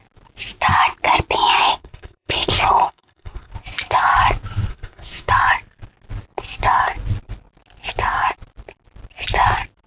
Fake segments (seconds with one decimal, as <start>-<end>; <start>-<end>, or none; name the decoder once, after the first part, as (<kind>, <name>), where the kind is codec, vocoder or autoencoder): 1.6-3.5 (codec, SNAC); 4.7-5.3